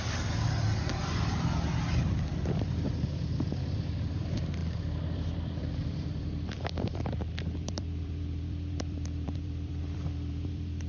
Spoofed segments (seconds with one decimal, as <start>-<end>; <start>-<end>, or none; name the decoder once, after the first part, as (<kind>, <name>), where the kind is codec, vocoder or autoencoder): 2.2-10.9 (vocoder, BigVGAN v2)